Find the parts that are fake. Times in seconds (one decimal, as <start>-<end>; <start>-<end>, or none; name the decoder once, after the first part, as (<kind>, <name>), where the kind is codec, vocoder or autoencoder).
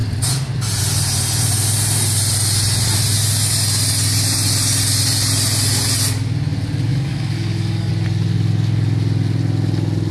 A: 6.9-7.9 (codec, DAC)